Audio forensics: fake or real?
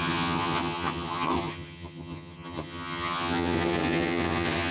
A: fake